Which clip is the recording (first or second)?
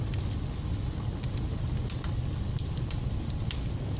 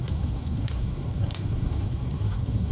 first